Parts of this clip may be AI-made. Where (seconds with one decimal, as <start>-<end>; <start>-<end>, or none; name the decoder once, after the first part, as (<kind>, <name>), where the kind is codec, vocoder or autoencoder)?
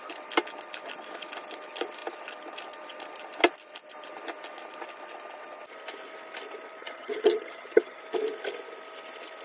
6.8-8.0 (vocoder, HiFi-GAN)